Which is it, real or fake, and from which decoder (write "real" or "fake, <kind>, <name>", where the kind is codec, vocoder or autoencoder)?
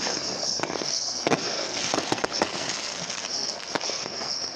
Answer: fake, codec, SNAC